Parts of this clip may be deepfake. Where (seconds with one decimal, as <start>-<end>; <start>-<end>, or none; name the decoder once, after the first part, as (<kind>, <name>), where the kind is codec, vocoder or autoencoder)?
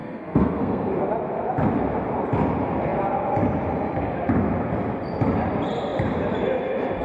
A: 0.0-0.9 (codec, SNAC)